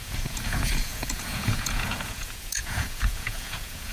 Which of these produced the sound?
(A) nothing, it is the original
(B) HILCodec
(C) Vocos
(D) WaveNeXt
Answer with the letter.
C